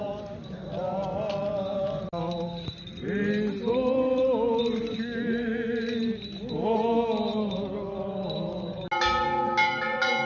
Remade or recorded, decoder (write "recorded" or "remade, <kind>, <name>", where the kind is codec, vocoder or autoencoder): recorded